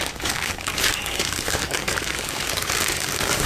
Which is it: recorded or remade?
remade